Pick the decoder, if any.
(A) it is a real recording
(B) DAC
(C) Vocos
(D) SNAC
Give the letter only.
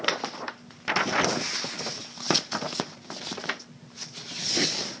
A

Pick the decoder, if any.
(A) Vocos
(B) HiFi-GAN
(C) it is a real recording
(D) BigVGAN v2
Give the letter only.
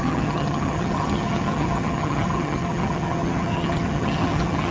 B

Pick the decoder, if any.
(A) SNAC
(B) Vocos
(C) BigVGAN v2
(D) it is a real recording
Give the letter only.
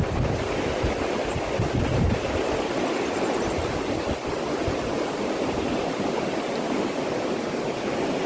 D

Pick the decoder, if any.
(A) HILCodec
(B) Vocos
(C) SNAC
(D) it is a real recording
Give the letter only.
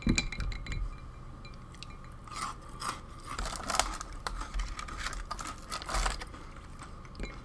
D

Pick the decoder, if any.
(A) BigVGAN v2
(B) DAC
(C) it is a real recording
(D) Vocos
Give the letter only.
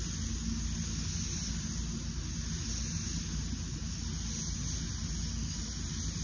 C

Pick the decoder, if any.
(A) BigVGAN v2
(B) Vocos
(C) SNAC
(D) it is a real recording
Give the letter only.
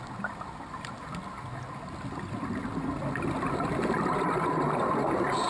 D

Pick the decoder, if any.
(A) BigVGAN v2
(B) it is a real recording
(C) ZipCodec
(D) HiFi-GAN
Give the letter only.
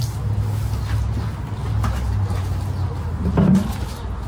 B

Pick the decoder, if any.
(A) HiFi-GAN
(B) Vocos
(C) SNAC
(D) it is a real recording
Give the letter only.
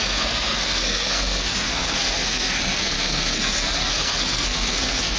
C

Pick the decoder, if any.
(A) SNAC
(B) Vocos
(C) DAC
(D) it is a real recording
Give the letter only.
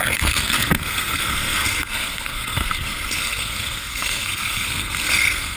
A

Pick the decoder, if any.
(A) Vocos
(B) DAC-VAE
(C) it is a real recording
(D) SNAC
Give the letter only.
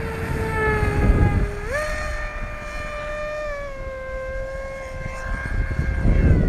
C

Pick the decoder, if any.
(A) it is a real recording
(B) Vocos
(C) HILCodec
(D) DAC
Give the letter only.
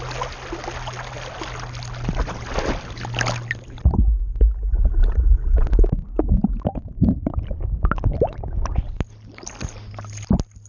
A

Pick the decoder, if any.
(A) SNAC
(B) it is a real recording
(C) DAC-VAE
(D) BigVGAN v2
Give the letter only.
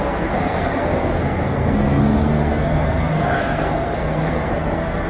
A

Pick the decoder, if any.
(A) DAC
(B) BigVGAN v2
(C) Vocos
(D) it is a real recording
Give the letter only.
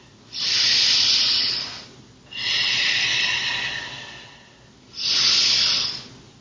D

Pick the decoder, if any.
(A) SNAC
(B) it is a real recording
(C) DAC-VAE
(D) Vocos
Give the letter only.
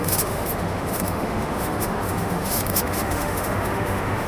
C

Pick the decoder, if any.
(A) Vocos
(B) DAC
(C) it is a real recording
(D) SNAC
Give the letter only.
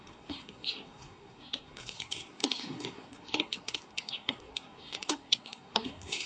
D